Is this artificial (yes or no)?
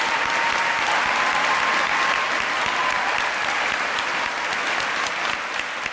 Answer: no